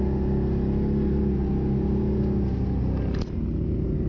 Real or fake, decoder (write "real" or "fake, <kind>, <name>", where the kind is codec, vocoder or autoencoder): real